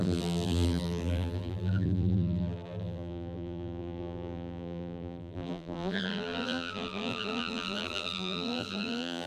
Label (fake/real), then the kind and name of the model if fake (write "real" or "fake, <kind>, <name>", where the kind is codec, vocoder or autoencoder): fake, vocoder, BigVGAN v2